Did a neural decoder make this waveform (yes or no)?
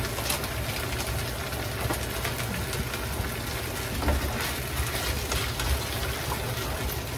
no